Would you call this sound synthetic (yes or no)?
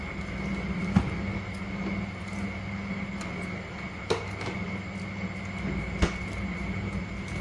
no